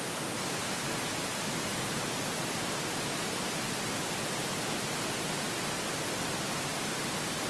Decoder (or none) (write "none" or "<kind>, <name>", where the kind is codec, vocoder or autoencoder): none